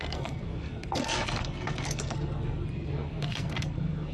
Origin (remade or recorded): remade